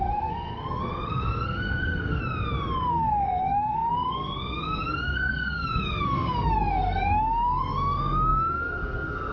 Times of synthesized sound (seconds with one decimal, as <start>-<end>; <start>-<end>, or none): 0.0-2.2; 2.9-9.3